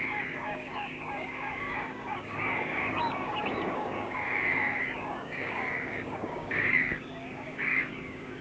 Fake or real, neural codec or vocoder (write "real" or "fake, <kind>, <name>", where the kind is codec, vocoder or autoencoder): fake, codec, DAC